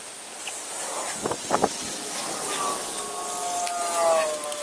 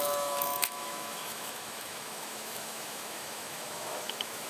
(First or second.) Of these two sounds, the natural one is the first